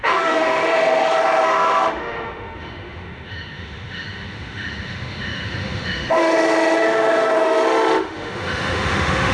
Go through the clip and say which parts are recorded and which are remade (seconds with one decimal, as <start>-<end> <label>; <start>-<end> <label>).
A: 0.0-9.3 remade